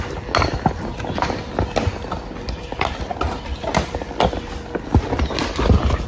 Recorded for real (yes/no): yes